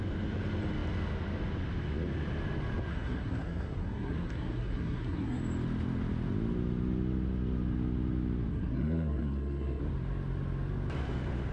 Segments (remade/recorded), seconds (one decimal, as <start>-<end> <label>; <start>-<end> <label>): 0.0-2.9 recorded; 2.9-5.4 remade; 5.4-8.5 recorded; 8.5-9.8 remade; 9.8-11.5 recorded

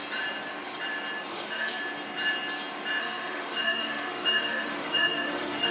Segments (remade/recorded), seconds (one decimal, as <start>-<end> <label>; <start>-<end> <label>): 0.0-1.3 recorded; 1.3-1.8 remade; 1.8-3.0 recorded; 3.0-5.7 remade

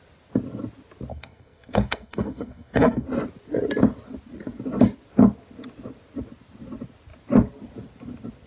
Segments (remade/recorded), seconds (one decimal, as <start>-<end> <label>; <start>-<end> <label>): 0.0-1.1 recorded; 1.1-3.1 remade; 3.1-8.5 recorded

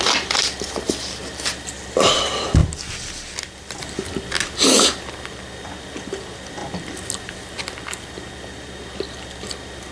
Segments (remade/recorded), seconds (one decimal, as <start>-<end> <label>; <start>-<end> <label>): 0.0-9.9 recorded

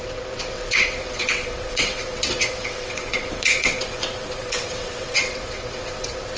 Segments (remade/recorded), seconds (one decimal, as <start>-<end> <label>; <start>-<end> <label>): 0.0-6.4 remade